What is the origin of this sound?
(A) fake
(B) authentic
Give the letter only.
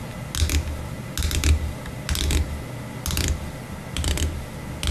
B